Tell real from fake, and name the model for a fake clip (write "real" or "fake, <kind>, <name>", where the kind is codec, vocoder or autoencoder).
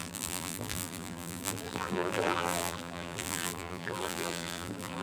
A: fake, vocoder, BigVGAN v2